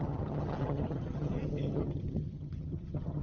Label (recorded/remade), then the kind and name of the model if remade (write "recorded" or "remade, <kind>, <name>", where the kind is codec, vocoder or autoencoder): remade, vocoder, HiFi-GAN